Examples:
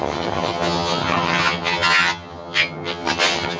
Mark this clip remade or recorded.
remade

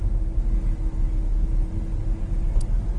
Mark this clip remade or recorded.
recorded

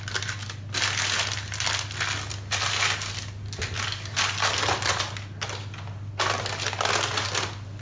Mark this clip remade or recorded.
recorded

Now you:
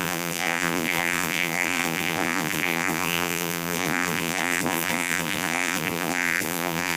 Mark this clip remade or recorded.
remade